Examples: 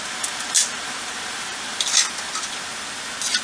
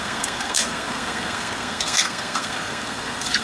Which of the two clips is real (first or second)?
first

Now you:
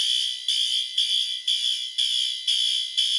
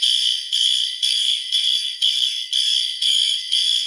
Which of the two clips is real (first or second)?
first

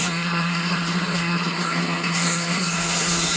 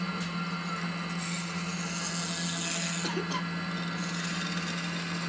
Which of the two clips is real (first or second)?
second